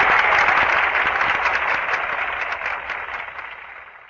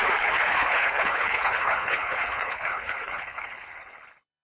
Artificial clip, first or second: second